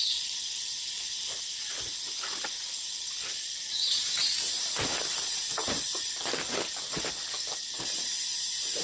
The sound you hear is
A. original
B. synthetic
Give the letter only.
A